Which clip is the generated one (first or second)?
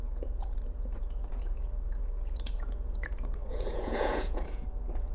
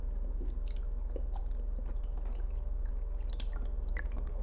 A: first